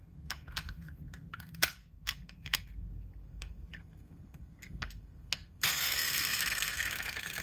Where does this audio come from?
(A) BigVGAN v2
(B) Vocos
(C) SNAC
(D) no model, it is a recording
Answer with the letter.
C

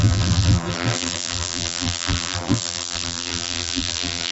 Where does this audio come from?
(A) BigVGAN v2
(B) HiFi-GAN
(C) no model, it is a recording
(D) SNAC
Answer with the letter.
A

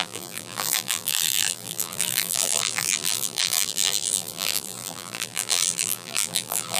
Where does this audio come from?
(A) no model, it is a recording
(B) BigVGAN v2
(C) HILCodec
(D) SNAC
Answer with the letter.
B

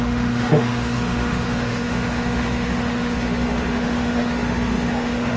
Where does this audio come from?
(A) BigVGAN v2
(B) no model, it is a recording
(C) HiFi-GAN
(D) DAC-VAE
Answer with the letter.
D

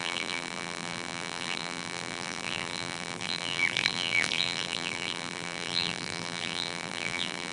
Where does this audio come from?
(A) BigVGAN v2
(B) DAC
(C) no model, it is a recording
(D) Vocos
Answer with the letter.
A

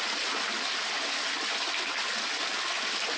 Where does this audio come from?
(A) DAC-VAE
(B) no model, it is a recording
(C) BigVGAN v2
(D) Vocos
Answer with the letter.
B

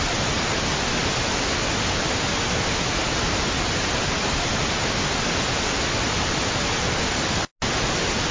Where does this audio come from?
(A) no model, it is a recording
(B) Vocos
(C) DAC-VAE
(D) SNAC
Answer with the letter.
A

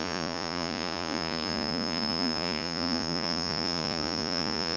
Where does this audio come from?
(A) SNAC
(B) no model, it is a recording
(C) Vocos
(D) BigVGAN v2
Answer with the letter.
C